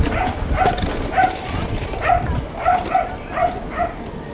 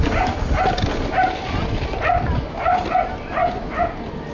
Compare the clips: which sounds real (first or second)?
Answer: second